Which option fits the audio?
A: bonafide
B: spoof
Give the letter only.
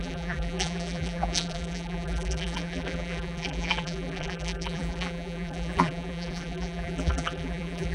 B